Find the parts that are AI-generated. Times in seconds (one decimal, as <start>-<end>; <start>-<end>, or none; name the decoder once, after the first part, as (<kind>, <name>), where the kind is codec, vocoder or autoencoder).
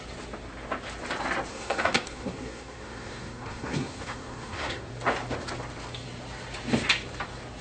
1.5-4.9 (codec, SNAC)